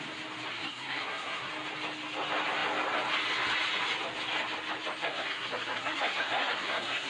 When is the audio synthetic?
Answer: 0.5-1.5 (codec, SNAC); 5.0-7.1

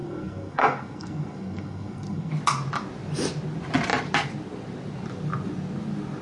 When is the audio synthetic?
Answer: 0.0-2.3 (codec, SNAC)